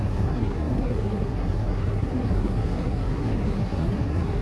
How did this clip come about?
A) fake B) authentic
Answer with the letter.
A